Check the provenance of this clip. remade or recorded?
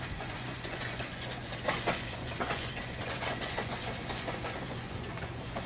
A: remade